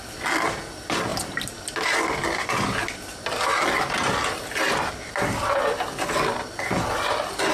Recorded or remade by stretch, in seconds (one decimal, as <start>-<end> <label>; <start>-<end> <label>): 0.0-7.5 recorded